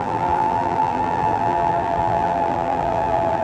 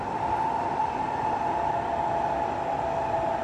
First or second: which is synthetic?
first